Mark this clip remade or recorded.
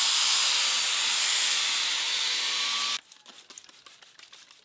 recorded